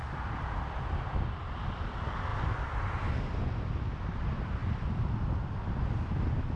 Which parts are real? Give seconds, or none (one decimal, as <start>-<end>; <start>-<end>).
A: 0.0-6.6